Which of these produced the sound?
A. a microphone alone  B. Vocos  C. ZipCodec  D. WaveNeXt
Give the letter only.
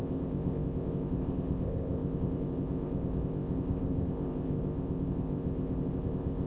C